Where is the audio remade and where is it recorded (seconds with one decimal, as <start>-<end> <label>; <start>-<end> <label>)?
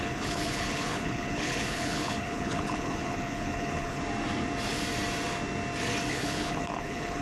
0.0-4.0 remade; 4.0-6.1 recorded; 6.1-7.2 remade